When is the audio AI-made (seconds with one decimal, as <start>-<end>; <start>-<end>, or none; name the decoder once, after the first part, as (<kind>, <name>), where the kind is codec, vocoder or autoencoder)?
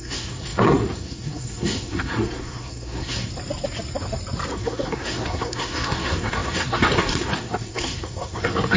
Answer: 0.0-3.3 (codec, SNAC); 4.5-8.8